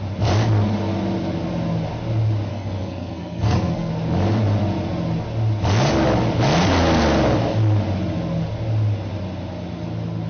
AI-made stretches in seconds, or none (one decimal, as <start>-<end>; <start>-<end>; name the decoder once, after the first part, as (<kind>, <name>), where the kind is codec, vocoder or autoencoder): 2.5-3.9 (codec, SNAC)